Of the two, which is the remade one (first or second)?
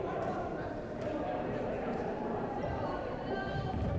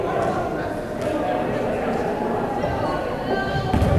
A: first